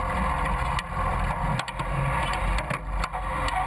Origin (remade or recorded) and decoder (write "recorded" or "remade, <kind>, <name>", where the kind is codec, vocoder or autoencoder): recorded